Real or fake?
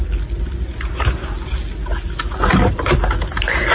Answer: real